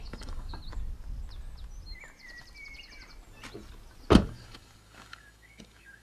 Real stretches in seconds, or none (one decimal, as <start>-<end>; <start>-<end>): 0.6-4.2